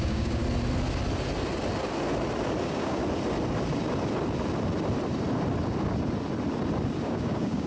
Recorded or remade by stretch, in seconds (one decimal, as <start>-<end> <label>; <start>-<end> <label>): 0.0-0.4 remade; 0.4-2.6 recorded; 2.6-3.0 remade; 3.0-7.0 recorded; 7.0-7.7 remade

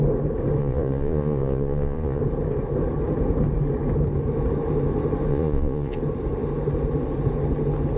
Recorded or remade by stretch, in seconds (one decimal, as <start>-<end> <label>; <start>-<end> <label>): 0.0-0.6 recorded; 0.6-2.2 remade; 2.2-5.3 recorded; 5.3-6.0 remade; 6.0-8.0 recorded

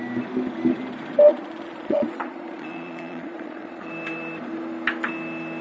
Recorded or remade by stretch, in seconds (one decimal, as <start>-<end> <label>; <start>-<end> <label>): 0.0-1.3 recorded; 1.3-3.9 remade; 3.9-5.6 recorded

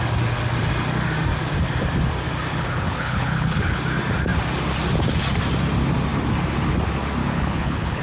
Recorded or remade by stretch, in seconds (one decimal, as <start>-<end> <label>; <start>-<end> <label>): 0.0-2.5 recorded; 2.5-3.8 remade; 3.8-7.2 recorded; 7.2-8.0 remade